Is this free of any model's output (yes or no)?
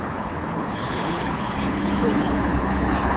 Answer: no